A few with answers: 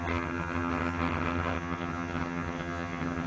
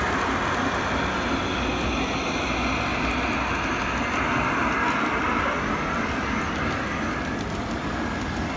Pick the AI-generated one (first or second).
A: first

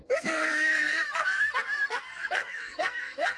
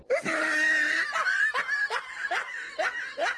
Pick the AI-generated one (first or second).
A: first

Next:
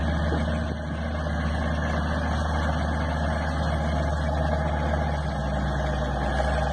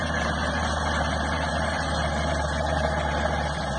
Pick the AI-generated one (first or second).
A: second